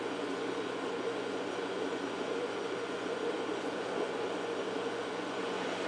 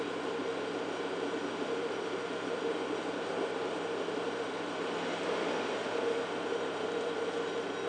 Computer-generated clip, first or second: first